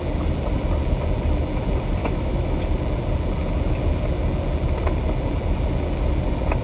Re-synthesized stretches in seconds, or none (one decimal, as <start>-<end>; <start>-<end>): 2.0-2.6